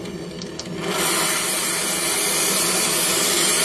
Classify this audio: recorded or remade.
recorded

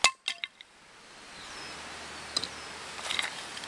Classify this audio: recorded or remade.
recorded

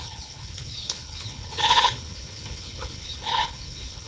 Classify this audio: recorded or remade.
remade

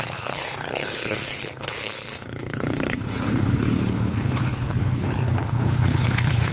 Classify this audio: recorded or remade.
remade